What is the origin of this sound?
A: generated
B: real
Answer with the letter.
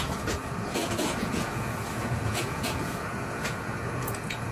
A